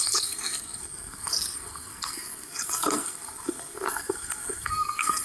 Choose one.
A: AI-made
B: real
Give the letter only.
A